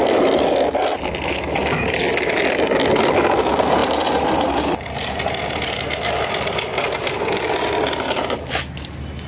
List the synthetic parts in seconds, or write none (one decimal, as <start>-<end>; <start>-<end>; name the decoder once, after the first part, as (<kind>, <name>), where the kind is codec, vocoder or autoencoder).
3.8-6.0 (vocoder, BigVGAN v2)